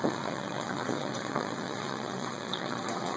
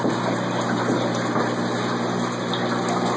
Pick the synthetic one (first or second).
first